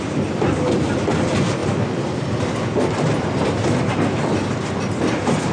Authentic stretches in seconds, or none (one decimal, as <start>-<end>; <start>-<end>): 0.0-5.5